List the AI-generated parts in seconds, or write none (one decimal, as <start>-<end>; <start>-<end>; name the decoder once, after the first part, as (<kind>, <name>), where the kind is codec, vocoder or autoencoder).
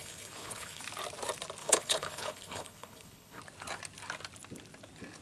0.0-0.8 (codec, HILCodec); 1.6-3.4